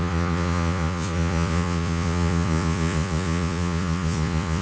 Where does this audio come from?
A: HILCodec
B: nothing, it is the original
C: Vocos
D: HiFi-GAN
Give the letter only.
C